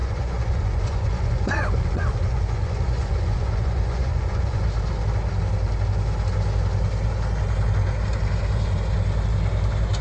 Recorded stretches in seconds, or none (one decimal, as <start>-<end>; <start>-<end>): 4.6-10.0